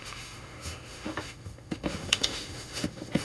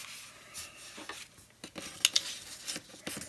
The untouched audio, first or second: second